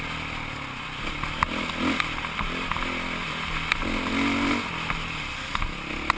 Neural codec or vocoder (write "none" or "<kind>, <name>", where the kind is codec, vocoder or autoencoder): none